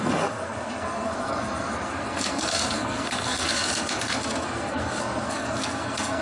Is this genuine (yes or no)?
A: no